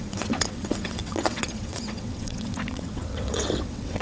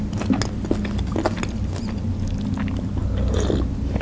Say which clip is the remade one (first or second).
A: first